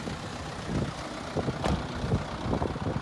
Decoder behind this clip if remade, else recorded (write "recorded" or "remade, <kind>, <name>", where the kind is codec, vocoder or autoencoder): recorded